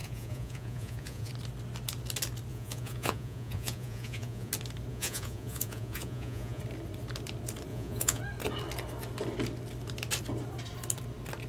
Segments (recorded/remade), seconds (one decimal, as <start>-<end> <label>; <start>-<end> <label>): 0.0-1.3 remade; 1.3-2.5 recorded; 2.5-4.5 remade; 4.5-4.9 recorded; 4.9-6.6 remade; 6.6-7.7 recorded; 7.7-8.2 remade; 8.2-11.5 recorded